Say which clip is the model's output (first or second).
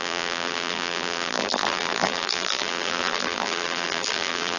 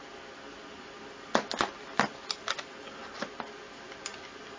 first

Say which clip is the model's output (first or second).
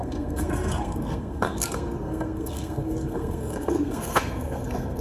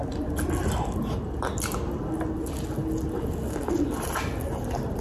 first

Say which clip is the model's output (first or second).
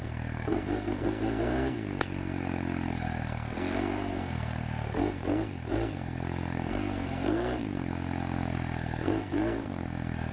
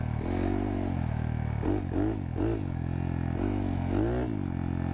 first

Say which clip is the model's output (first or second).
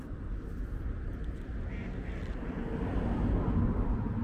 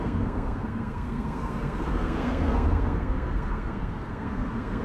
second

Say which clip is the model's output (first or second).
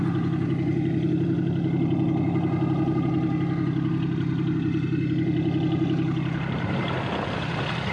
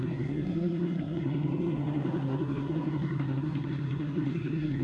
second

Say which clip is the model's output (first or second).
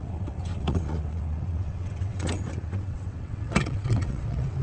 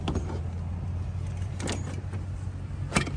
first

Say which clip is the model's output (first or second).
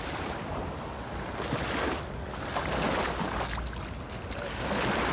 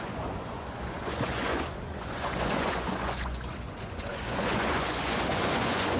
second